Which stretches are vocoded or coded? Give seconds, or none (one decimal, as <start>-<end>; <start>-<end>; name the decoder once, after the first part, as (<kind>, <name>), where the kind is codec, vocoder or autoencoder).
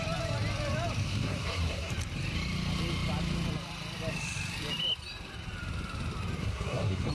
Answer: 1.0-1.9 (codec, SNAC); 6.4-7.1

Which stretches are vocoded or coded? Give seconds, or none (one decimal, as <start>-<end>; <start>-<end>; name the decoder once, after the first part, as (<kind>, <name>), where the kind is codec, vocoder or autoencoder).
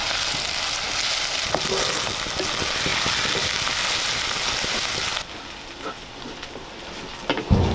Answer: none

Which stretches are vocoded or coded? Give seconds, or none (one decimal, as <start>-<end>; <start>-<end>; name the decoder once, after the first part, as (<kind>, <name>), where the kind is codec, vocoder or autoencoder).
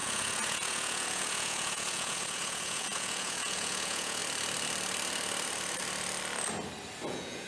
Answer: 0.0-4.2 (vocoder, Vocos); 7.1-7.5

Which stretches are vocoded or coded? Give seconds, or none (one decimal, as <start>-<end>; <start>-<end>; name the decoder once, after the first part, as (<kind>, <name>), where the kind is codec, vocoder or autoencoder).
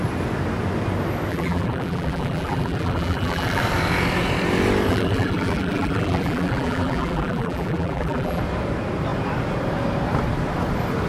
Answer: 1.3-3.6 (vocoder, BigVGAN v2); 4.9-8.4